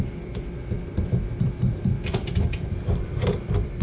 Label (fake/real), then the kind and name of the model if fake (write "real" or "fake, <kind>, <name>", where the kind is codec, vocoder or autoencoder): fake, vocoder, BigVGAN v2